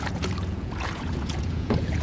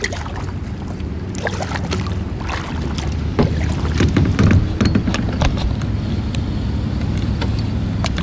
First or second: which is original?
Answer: second